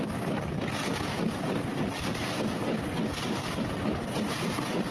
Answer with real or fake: real